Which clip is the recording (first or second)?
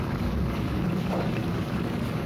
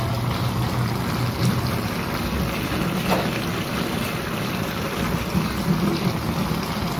second